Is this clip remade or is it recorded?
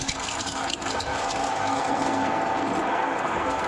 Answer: remade